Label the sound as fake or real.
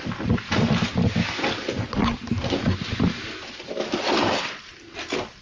real